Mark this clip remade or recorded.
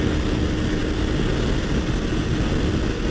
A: recorded